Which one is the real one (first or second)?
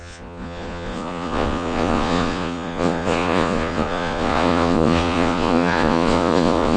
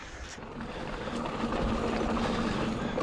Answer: second